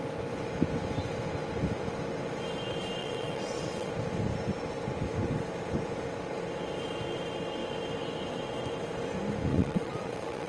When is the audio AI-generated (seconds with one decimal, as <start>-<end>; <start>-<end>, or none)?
3.0-3.9; 9.5-10.5